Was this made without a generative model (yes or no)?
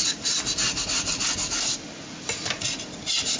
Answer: yes